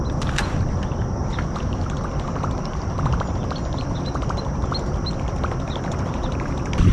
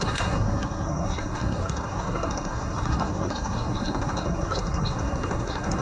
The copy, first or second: second